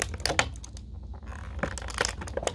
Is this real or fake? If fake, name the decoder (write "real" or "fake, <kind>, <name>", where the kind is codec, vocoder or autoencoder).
real